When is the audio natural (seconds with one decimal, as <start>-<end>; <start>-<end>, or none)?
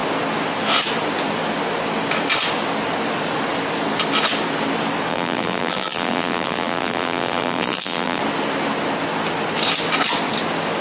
0.0-5.1; 8.2-10.8